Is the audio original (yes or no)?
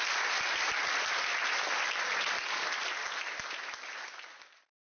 yes